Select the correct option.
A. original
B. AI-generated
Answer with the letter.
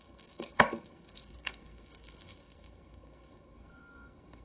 B